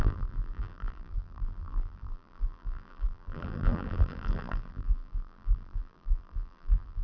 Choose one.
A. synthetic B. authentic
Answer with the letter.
A